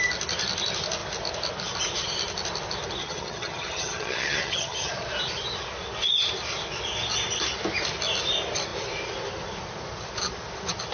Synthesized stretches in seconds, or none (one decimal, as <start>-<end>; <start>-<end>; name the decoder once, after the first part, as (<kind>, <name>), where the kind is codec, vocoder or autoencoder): 3.0-4.9 (vocoder, HiFi-GAN)